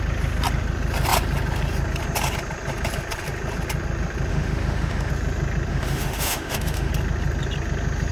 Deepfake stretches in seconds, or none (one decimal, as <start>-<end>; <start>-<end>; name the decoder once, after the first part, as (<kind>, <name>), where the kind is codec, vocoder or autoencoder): 4.3-5.1 (autoencoder, DAC-VAE); 5.7-6.9